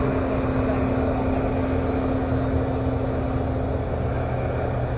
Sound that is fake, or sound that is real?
real